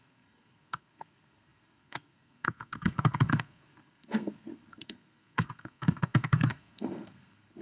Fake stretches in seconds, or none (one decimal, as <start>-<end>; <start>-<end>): 0.0-7.6